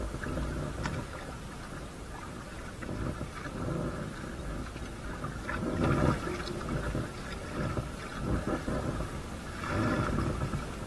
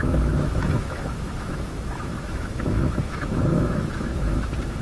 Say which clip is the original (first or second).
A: first